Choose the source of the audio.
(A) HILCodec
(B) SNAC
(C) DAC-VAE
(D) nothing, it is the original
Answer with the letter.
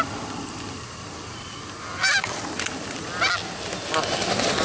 D